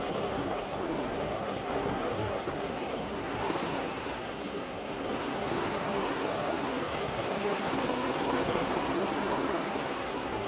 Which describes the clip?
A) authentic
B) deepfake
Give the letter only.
B